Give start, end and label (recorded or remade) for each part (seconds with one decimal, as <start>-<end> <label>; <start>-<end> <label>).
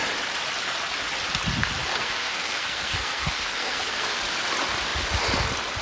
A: 0.0-1.9 recorded; 1.9-4.2 remade; 4.2-5.8 recorded